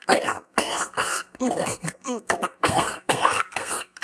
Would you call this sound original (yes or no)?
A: no